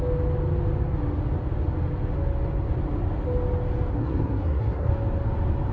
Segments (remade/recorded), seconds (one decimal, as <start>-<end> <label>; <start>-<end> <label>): 0.0-4.0 recorded; 4.0-4.9 remade; 4.9-5.7 recorded